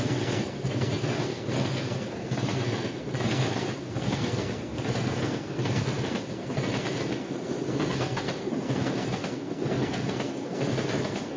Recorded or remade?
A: remade